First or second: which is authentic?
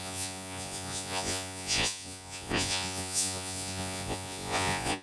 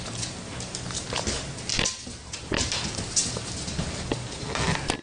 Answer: second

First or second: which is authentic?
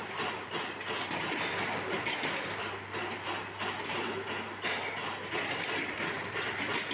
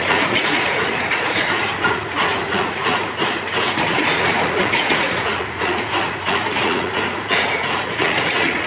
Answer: first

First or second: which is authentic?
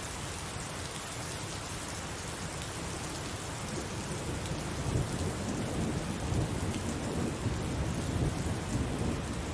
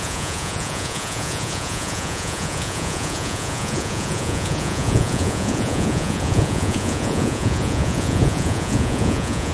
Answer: first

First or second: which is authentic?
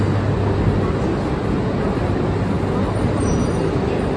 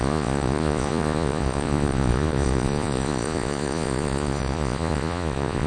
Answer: first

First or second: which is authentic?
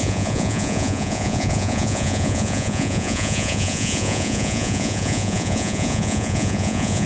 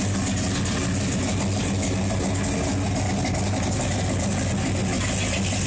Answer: second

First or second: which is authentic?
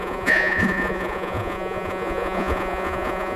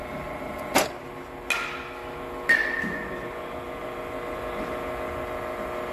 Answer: second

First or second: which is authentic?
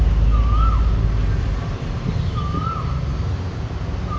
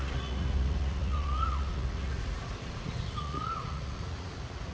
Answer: first